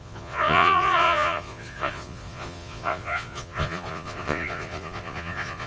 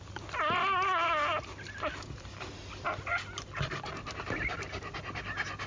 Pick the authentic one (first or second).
second